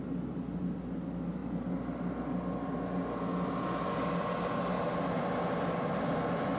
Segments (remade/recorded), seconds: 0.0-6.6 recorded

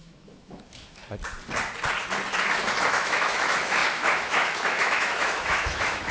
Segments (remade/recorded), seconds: 0.0-1.0 remade; 1.0-2.9 recorded; 2.9-6.1 remade

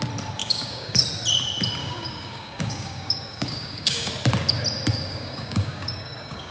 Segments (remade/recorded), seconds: 0.0-0.4 recorded; 0.4-1.0 remade; 1.0-1.8 recorded; 1.8-4.1 remade; 4.1-5.1 recorded; 5.1-6.5 remade

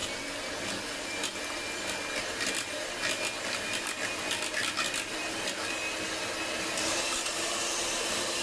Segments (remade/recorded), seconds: 0.0-0.8 recorded; 0.8-1.3 remade; 1.3-5.1 recorded; 5.1-5.8 remade; 5.8-6.5 recorded; 6.5-8.4 remade

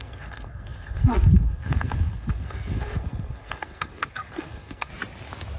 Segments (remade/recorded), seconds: 0.0-4.9 remade; 4.9-5.6 recorded

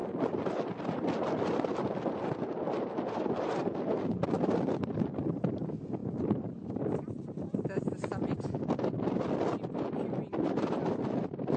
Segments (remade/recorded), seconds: 0.0-3.6 remade; 3.6-4.6 recorded; 4.6-11.6 remade

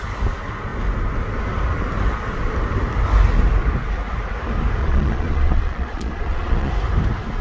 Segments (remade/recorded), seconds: 0.0-4.8 recorded; 4.8-6.7 remade; 6.7-7.4 recorded

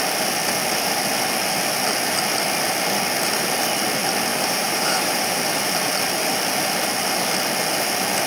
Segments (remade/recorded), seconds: 0.0-4.3 recorded; 4.3-5.4 remade; 5.4-8.3 recorded